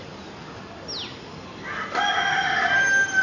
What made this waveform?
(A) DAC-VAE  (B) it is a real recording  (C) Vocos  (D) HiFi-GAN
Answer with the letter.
B